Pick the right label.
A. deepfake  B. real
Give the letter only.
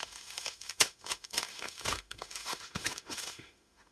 A